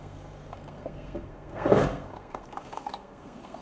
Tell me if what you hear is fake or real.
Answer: fake